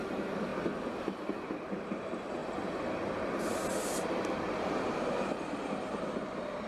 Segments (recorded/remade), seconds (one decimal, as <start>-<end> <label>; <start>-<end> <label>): 0.0-6.7 recorded